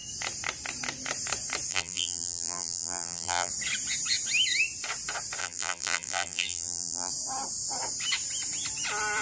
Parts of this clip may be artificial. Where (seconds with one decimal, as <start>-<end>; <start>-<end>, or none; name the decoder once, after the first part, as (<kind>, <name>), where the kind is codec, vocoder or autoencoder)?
1.7-3.5 (vocoder, BigVGAN v2); 5.4-7.1